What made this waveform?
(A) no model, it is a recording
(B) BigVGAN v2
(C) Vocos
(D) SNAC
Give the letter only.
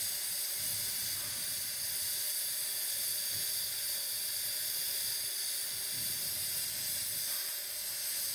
A